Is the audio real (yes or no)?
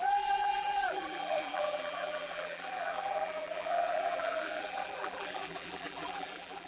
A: no